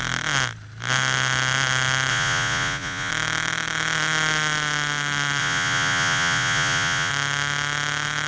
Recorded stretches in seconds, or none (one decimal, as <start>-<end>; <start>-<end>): 0.0-2.1; 3.1-5.4; 7.1-8.3